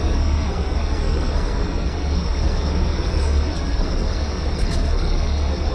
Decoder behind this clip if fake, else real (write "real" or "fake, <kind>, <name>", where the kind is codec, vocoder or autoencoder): fake, codec, SNAC